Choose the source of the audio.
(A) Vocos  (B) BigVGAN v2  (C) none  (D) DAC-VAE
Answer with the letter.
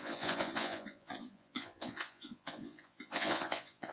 A